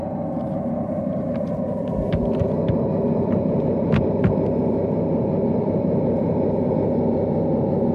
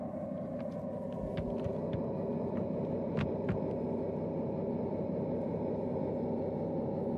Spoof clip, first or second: first